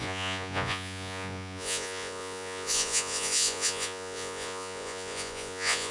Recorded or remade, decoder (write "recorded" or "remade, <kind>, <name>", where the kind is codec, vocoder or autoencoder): remade, vocoder, Vocos